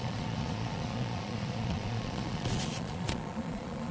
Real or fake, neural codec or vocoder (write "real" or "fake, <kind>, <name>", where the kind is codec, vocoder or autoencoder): fake, vocoder, Vocos